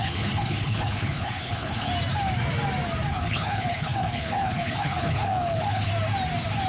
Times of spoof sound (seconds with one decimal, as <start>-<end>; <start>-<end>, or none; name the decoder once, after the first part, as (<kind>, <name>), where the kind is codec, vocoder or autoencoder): 0.0-1.9 (codec, HILCodec); 3.1-5.9